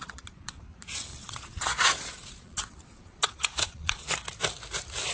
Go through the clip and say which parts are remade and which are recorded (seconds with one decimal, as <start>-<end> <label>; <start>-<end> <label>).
0.0-0.6 remade; 0.6-1.1 recorded; 1.1-4.2 remade; 4.2-5.1 recorded